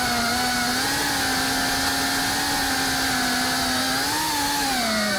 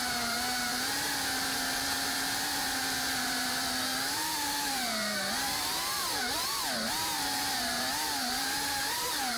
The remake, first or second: second